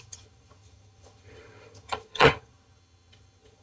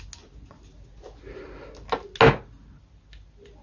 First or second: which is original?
second